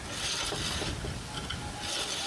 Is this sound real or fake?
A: real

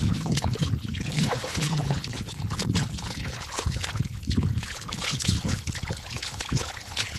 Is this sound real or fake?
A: fake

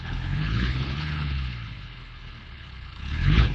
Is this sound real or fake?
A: fake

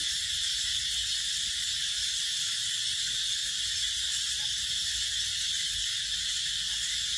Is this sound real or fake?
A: real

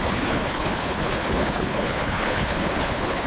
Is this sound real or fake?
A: fake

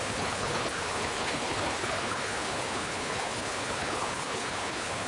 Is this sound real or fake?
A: fake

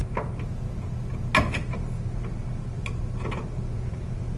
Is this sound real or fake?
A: real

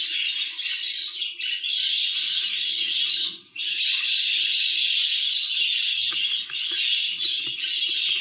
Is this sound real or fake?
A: real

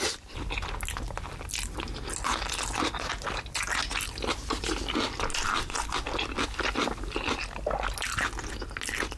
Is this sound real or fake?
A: real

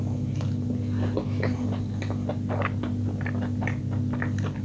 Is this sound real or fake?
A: real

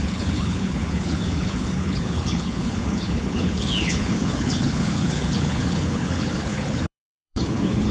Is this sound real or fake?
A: fake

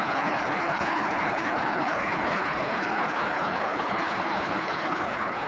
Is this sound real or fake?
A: fake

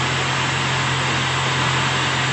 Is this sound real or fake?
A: real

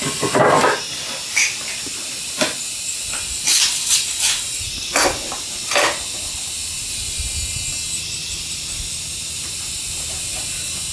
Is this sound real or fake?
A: real